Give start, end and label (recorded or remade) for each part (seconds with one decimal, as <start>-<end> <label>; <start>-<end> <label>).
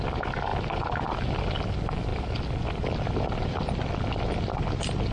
0.0-5.1 recorded